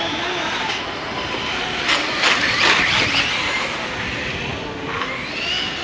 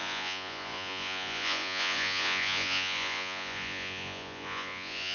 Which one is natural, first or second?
first